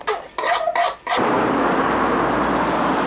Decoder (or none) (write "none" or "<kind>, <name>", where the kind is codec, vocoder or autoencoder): none